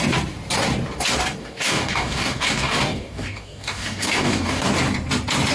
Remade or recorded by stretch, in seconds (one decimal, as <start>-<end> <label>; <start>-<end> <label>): 0.0-1.4 recorded; 1.4-4.7 remade; 4.7-5.5 recorded